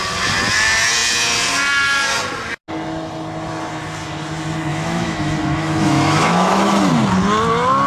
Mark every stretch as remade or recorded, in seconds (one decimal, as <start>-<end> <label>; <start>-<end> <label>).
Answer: 0.0-4.7 recorded; 4.7-6.9 remade; 6.9-7.9 recorded